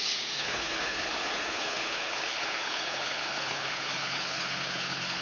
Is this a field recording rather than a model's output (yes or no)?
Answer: no